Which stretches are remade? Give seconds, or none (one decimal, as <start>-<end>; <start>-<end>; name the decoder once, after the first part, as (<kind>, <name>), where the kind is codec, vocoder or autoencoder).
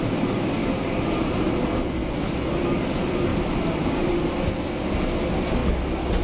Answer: 0.6-1.1 (vocoder, BigVGAN v2); 3.3-3.8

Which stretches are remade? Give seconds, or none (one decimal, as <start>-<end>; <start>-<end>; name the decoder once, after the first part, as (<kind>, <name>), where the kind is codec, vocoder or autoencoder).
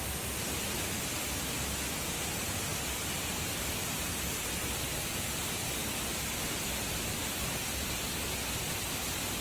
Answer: none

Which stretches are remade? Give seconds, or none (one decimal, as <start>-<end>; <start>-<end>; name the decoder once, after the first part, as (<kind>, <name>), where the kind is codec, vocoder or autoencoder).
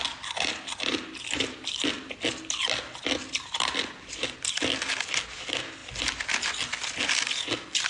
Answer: none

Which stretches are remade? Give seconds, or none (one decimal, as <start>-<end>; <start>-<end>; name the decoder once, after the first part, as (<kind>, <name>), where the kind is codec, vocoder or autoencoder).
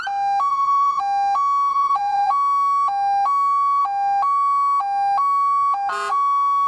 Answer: 0.5-1.0 (vocoder, BigVGAN v2); 1.7-2.3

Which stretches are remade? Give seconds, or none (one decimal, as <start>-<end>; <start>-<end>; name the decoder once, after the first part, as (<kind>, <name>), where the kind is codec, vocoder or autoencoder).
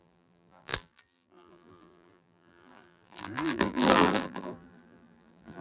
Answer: 0.0-5.6 (vocoder, BigVGAN v2)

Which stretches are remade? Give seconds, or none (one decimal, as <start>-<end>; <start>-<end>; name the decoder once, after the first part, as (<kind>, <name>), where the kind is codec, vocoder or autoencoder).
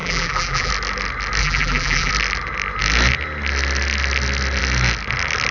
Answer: 0.0-0.7 (vocoder, BigVGAN v2); 1.4-2.1